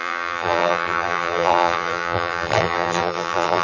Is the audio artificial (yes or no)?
yes